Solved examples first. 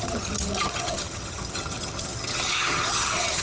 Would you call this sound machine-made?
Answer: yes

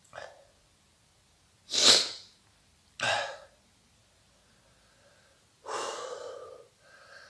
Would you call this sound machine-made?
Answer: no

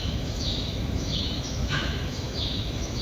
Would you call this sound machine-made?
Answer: yes